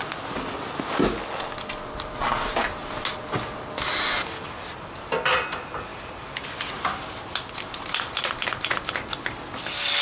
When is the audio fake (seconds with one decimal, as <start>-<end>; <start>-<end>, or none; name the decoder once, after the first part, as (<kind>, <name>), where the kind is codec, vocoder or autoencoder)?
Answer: none

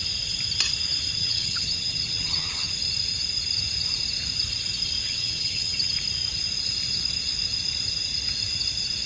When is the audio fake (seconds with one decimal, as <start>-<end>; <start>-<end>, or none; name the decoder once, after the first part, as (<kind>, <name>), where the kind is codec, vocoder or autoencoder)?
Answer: 1.2-2.7 (vocoder, HiFi-GAN); 5.0-5.9